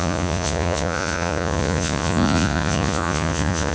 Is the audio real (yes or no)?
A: no